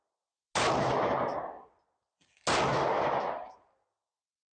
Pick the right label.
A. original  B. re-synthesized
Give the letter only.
A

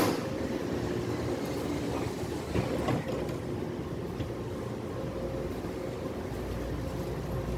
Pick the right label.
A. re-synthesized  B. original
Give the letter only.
B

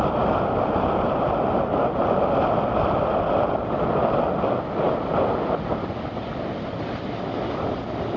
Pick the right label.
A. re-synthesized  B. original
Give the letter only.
B